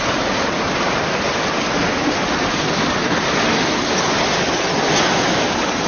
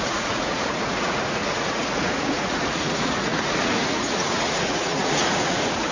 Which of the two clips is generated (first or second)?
second